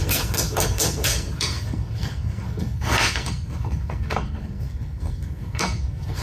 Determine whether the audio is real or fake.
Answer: fake